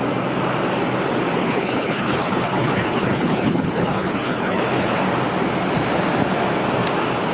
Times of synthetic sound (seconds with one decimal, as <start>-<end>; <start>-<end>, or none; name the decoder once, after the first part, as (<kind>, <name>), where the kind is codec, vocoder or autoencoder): 1.4-5.0 (codec, HILCodec)